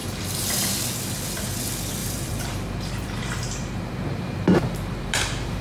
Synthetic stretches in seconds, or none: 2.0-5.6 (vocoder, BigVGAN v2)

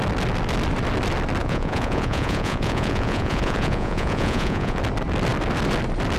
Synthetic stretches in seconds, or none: 1.4-4.8 (vocoder, Vocos)

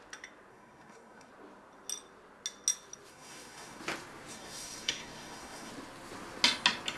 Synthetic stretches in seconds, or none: 0.5-1.3 (codec, SNAC); 3.1-3.8; 4.3-5.7

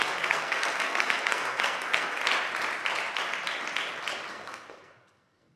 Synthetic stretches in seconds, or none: 0.0-2.2 (codec, SNAC); 4.3-5.6

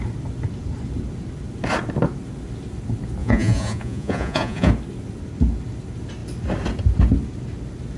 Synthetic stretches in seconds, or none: 3.2-4.7 (vocoder, Vocos)

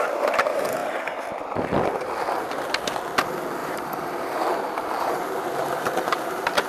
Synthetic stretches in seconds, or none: 3.6-6.7 (vocoder, BigVGAN v2)

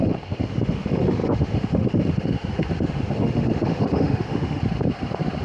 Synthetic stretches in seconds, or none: 0.0-4.6 (autoencoder, DAC-VAE)

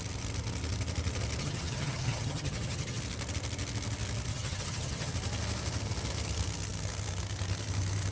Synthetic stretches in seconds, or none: 1.4-3.0 (vocoder, HiFi-GAN); 4.3-5.1